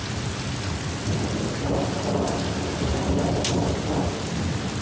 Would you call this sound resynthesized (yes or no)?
no